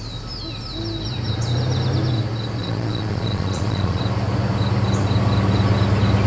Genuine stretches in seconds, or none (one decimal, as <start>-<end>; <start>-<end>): 0.0-2.6; 4.0-6.3